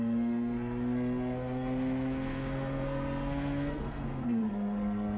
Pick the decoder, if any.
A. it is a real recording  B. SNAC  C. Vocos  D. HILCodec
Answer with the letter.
B